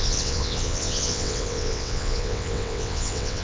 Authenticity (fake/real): fake